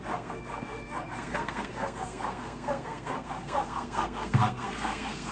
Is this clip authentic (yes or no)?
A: no